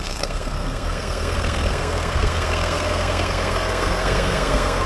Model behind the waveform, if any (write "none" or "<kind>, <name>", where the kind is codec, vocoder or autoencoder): codec, SNAC